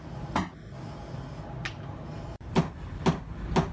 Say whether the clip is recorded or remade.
recorded